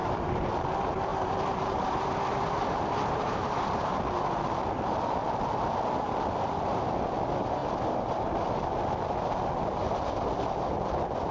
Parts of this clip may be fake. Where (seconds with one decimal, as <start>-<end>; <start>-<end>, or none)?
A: 0.0-0.5; 1.1-4.0